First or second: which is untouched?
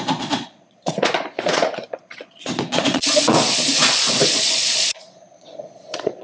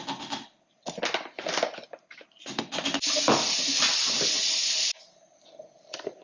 second